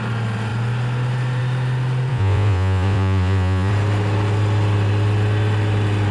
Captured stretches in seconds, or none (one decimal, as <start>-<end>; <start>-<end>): 0.0-2.1; 3.7-6.1

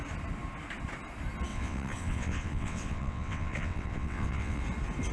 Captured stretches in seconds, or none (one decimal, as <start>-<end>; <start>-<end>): 0.0-1.5; 4.6-5.1

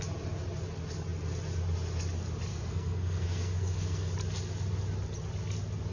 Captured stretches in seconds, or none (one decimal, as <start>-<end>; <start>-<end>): 0.0-2.5; 4.1-5.9

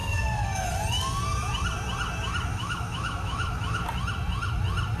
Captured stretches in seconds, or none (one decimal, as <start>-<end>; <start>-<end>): 0.7-2.5; 3.8-5.0

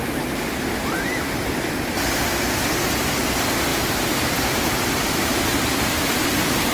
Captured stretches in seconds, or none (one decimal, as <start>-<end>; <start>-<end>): 0.0-3.7; 5.0-6.7